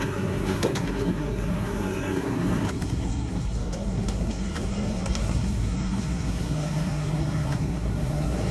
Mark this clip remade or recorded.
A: remade